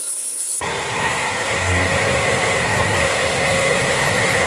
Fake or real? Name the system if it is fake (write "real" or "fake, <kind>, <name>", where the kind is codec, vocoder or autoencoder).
fake, codec, SNAC